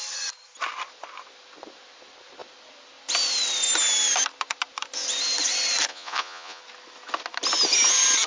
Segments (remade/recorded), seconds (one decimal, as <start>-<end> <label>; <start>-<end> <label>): 0.0-5.9 recorded; 5.9-6.6 remade; 6.6-8.3 recorded